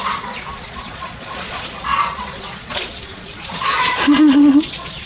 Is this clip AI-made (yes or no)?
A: yes